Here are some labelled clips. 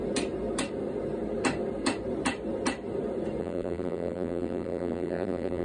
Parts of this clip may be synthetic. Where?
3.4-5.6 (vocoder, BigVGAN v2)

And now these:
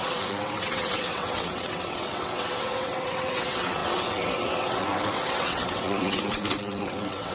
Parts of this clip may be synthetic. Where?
0.0-7.3 (vocoder, WaveNeXt)

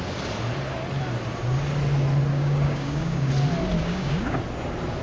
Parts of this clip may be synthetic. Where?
2.3-3.3 (codec, DAC); 3.8-4.4

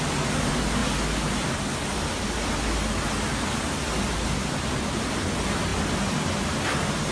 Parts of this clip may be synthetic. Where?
none

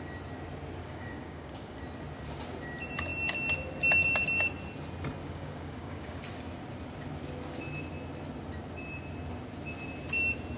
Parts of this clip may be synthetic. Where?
0.8-1.8 (codec, DAC); 5.2-6.2

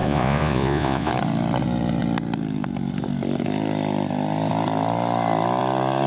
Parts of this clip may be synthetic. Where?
0.0-1.1 (vocoder, Vocos)